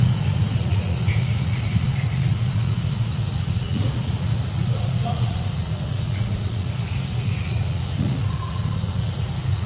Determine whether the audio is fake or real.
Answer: fake